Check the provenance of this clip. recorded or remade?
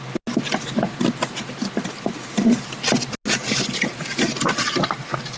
recorded